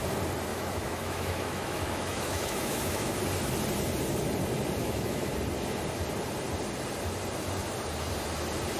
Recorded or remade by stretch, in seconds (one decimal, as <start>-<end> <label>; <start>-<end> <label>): 0.0-0.5 recorded; 0.5-3.2 remade; 3.2-4.8 recorded; 4.8-5.3 remade; 5.3-8.8 recorded